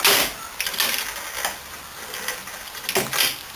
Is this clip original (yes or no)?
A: yes